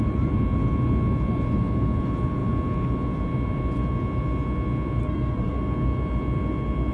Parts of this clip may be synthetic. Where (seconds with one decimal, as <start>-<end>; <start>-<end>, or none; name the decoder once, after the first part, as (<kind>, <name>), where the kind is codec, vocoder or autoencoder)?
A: 5.0-5.5 (codec, SNAC)